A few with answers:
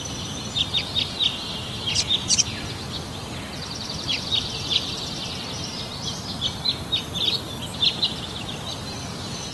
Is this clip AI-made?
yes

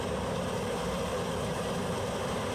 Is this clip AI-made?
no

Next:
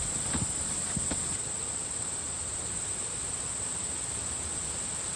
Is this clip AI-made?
no